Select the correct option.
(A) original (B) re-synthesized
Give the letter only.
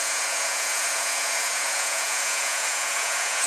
B